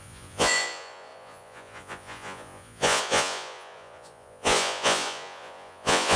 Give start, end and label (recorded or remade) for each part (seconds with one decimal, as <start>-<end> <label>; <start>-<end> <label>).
0.0-6.2 remade